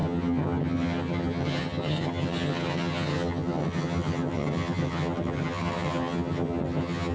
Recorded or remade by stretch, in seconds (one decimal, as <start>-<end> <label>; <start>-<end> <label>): 0.0-7.1 remade